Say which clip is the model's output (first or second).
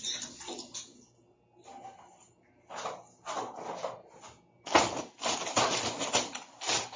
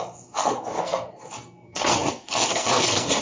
second